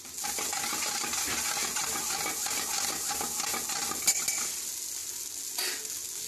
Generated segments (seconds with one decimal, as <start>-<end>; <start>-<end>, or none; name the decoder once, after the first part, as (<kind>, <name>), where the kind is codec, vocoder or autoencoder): none